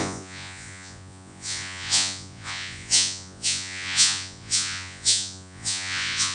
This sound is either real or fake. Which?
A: fake